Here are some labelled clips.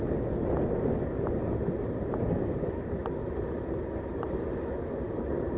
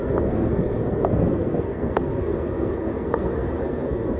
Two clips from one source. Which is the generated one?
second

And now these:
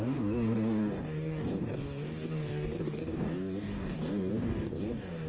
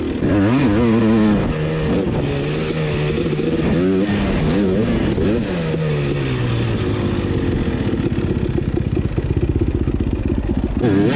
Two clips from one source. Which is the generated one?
first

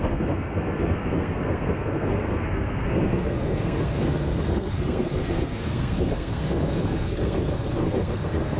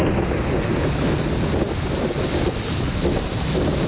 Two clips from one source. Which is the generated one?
first